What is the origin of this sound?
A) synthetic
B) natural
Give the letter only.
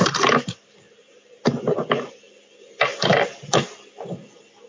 B